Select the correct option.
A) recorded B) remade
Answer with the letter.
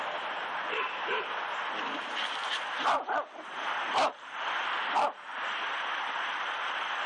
A